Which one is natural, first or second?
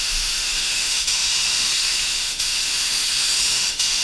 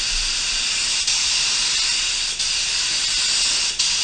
second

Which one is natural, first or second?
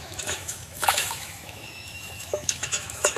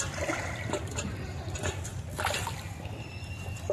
second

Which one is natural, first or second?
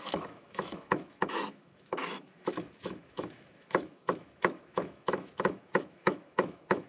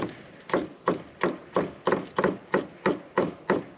second